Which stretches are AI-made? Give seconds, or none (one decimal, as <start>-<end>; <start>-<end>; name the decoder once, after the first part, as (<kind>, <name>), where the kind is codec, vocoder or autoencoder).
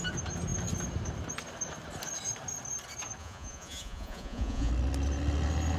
3.2-4.7 (vocoder, Vocos)